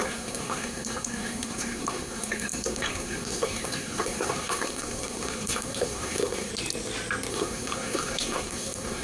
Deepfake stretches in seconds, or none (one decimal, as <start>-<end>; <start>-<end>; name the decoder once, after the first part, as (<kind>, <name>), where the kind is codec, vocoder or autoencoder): 0.0-6.5 (codec, SNAC); 7.3-9.0

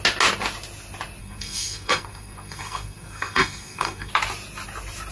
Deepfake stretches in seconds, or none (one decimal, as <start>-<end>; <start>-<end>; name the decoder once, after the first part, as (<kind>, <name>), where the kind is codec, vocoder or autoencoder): 1.2-4.1 (codec, SNAC)

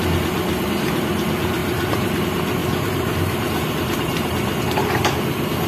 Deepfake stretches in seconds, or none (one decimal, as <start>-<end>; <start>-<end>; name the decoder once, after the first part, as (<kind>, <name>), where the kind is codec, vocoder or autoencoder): 1.6-2.2 (vocoder, BigVGAN v2); 2.6-4.9

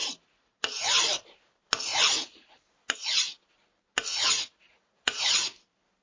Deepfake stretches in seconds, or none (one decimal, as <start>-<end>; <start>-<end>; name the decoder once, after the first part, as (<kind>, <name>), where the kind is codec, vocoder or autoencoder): 0.0-0.6 (vocoder, Vocos); 1.9-2.5; 4.1-5.2

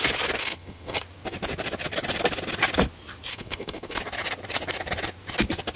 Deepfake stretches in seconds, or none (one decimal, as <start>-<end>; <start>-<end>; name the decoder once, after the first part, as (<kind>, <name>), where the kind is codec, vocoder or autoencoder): 0.4-1.0 (codec, SNAC); 3.3-4.0

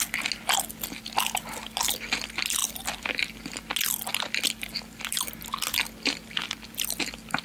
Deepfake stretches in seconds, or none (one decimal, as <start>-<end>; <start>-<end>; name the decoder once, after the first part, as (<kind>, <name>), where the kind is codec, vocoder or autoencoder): 2.6-3.2 (vocoder, BigVGAN v2)